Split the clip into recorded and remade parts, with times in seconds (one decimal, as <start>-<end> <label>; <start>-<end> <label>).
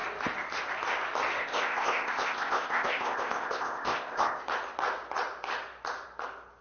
0.0-1.4 recorded; 1.4-4.4 remade; 4.4-6.6 recorded